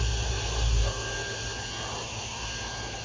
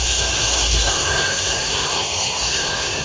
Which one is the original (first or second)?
first